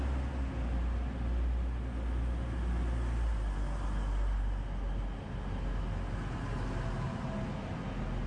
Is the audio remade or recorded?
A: recorded